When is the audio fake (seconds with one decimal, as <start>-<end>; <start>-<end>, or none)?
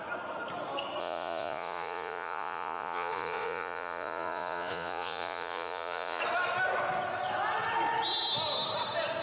1.0-6.2